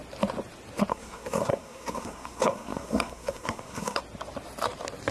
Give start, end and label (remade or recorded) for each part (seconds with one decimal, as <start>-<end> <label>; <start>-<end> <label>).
0.0-0.9 recorded; 0.9-4.0 remade; 4.0-5.1 recorded